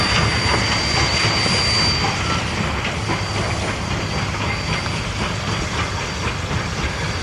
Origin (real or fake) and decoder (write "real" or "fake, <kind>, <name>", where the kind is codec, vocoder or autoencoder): real